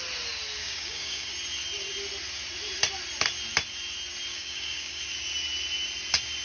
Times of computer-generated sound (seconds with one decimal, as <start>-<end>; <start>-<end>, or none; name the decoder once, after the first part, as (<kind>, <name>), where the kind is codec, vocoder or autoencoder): 0.6-1.3 (codec, DAC); 4.3-5.0